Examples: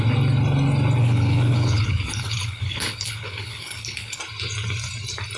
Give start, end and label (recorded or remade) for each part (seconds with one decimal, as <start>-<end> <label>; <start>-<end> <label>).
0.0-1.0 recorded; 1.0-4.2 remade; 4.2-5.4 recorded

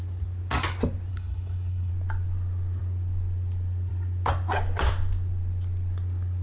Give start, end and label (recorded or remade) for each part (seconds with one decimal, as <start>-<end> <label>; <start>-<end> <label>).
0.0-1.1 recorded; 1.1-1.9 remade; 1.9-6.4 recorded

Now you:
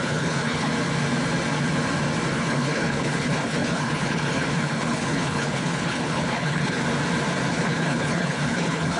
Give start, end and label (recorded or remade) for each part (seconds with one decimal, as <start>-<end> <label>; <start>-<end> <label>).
0.0-0.7 remade; 0.7-2.3 recorded; 2.3-6.8 remade; 6.8-7.5 recorded; 7.5-9.0 remade